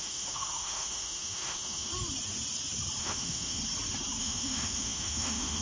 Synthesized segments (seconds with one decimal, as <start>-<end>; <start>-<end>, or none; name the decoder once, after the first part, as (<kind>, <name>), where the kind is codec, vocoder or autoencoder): 0.0-1.9 (autoencoder, DAC-VAE); 3.0-3.6; 4.2-5.6